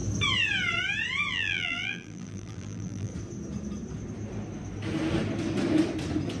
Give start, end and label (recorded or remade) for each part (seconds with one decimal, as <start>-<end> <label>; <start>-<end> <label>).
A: 0.0-1.3 recorded; 1.3-3.1 remade; 3.1-6.4 recorded